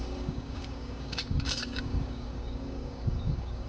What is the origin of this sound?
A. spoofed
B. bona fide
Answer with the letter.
A